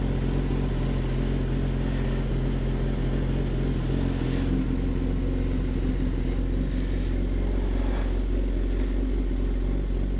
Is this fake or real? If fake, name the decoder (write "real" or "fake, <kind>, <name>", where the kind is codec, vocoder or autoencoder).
real